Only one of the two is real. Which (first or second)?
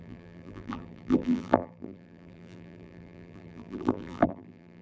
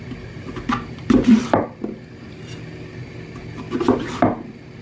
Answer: second